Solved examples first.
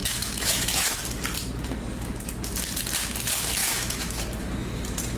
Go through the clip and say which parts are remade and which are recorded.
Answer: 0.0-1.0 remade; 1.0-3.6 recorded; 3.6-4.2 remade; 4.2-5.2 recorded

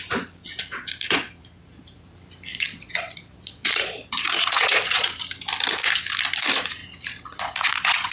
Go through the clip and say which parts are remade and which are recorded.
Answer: 0.0-0.4 recorded; 0.4-2.1 remade; 2.1-2.5 recorded; 2.5-5.2 remade; 5.2-6.8 recorded; 6.8-8.1 remade